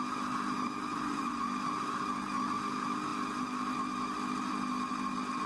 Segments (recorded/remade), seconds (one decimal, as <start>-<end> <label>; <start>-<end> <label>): 0.0-0.9 recorded; 0.9-1.5 remade; 1.5-5.5 recorded